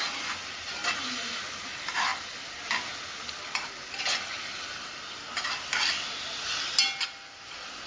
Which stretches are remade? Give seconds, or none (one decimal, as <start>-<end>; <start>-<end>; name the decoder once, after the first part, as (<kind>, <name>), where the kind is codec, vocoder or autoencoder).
none